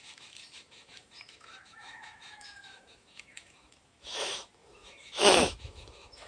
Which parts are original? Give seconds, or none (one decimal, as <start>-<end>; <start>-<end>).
none